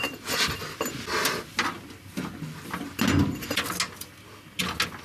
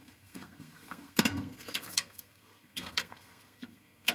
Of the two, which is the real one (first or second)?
first